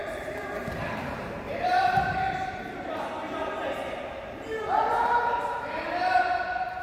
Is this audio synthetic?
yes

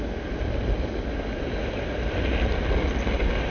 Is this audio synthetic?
no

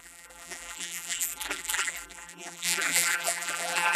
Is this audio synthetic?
yes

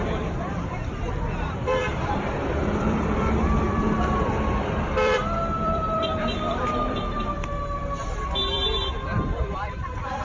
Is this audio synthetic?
yes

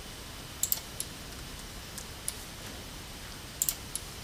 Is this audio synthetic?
no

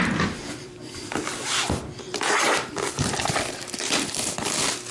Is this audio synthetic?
yes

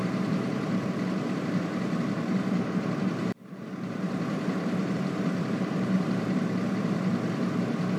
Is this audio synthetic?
yes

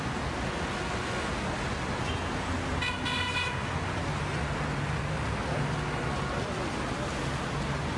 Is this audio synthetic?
no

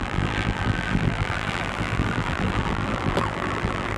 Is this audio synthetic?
yes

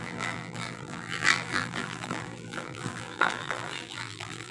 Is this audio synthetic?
yes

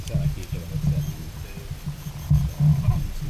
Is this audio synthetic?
no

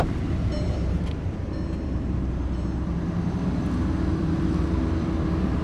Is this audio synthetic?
yes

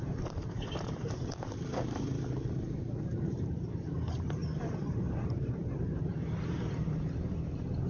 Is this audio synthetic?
yes